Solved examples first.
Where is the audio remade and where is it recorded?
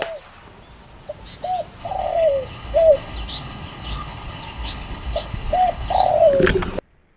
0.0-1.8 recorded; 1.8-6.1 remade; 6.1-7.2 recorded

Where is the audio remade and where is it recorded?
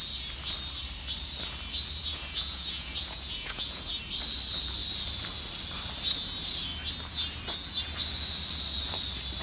0.0-2.0 recorded; 2.0-3.9 remade; 3.9-9.4 recorded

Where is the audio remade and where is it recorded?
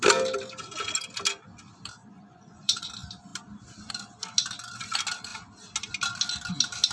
0.0-2.0 recorded; 2.0-2.9 remade; 2.9-6.9 recorded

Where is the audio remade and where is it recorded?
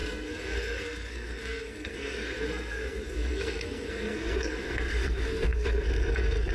0.0-6.5 remade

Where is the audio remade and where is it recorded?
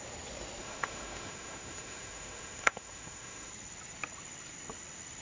0.0-0.6 recorded; 0.6-3.5 remade; 3.5-5.2 recorded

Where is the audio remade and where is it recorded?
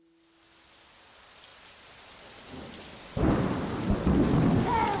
0.0-1.5 recorded; 1.5-4.3 remade; 4.3-5.0 recorded